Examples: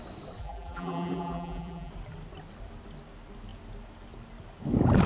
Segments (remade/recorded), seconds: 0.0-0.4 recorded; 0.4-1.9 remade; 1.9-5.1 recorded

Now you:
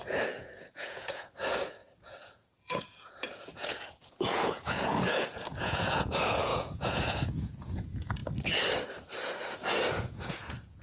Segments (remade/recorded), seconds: 0.0-8.2 remade; 8.2-9.9 recorded; 9.9-10.8 remade

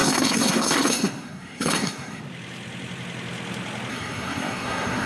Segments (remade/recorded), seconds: 0.0-2.2 remade; 2.2-3.9 recorded; 3.9-5.1 remade

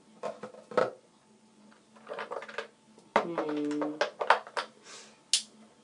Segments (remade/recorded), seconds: 0.0-0.8 recorded; 0.8-1.8 remade; 1.8-5.8 recorded

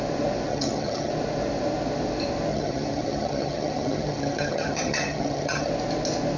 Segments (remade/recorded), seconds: 0.0-0.5 recorded; 0.5-1.1 remade; 1.1-2.5 recorded; 2.5-5.7 remade; 5.7-6.4 recorded

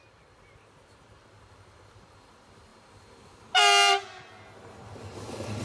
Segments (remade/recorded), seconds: 0.0-5.6 recorded

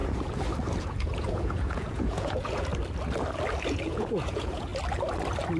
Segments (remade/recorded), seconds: 0.0-0.8 recorded; 0.8-2.7 remade; 2.7-3.7 recorded; 3.7-4.7 remade; 4.7-5.6 recorded